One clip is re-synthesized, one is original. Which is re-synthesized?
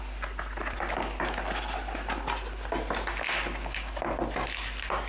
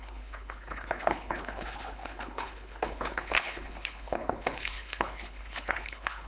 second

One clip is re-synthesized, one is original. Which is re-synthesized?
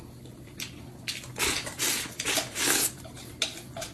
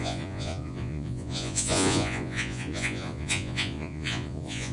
second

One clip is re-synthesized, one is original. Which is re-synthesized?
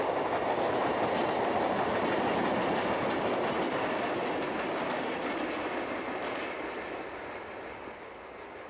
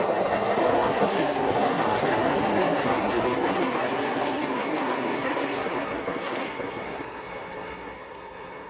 second